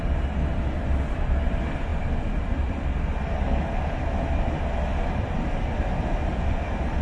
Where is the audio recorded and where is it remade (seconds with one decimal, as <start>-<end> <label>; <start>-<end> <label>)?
0.0-7.0 recorded